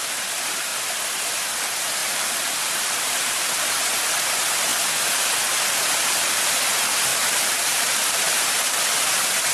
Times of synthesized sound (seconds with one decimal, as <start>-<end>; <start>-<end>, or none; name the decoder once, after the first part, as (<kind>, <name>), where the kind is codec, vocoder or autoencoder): 2.0-3.7 (vocoder, BigVGAN v2); 7.1-8.8